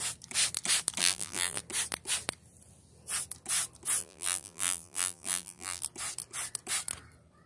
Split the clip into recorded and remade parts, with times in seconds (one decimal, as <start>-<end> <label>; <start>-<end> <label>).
0.0-1.0 recorded; 1.0-1.6 remade; 1.6-4.0 recorded; 4.0-5.8 remade; 5.8-7.5 recorded